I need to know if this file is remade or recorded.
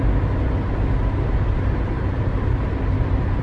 recorded